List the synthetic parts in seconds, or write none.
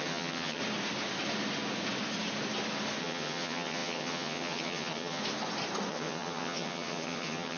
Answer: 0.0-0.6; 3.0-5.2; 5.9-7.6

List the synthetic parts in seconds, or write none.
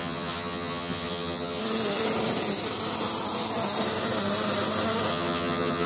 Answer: 0.0-1.6; 5.1-5.9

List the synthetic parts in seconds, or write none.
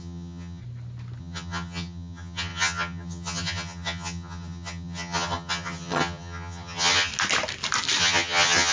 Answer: 0.0-0.6; 1.2-7.1; 8.0-8.7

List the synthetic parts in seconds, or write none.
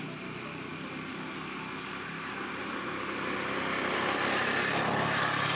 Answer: none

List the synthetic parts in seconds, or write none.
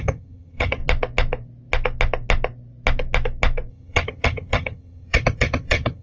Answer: 0.0-0.8; 3.7-6.0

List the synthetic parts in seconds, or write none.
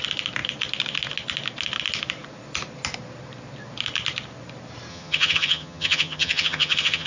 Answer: 4.9-7.1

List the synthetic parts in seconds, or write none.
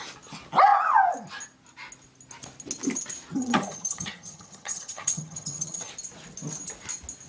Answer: 3.3-5.9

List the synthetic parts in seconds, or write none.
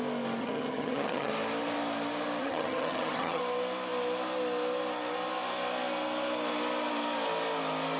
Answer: 0.4-1.3; 2.4-3.4